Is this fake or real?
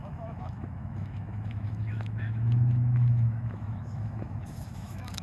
fake